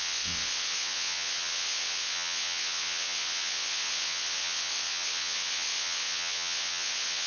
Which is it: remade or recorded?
remade